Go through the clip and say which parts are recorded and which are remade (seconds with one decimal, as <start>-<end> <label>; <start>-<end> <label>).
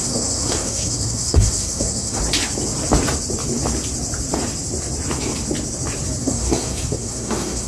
0.0-2.2 remade; 2.2-6.2 recorded; 6.2-7.7 remade